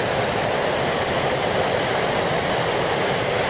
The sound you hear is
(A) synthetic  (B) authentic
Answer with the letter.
B